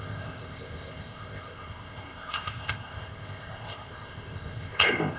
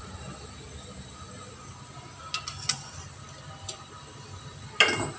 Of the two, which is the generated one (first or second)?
first